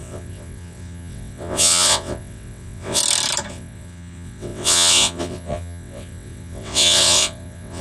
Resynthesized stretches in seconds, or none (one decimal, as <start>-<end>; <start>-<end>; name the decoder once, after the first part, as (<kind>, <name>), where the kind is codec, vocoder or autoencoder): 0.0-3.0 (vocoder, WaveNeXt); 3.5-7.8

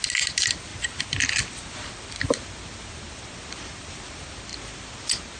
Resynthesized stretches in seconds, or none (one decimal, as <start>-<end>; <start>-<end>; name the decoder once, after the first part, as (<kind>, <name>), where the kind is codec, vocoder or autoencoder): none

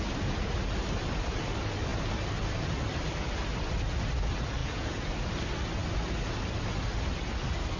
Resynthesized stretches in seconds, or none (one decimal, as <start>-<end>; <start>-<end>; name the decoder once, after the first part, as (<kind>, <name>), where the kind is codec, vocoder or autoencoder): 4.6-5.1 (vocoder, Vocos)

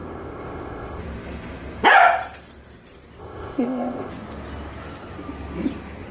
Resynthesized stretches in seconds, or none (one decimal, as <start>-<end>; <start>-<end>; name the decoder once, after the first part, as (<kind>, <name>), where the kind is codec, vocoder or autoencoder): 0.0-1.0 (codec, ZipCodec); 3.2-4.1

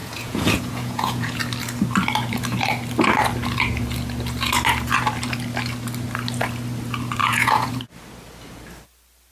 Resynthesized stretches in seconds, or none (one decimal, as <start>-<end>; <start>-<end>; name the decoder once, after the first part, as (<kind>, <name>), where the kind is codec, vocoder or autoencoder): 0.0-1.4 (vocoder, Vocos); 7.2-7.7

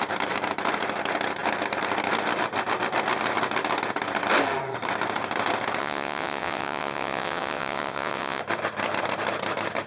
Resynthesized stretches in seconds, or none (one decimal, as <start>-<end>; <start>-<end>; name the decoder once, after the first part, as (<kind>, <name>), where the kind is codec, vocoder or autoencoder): 5.8-8.4 (vocoder, WaveNeXt)

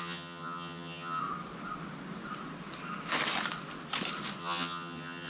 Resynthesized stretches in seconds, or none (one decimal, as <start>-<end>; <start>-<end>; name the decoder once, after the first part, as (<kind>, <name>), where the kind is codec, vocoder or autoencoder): 0.0-1.2 (vocoder, HiFi-GAN); 4.4-5.3